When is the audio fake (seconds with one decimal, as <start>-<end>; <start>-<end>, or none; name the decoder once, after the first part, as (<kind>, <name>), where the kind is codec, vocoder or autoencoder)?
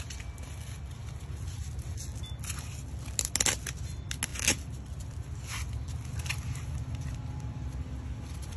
none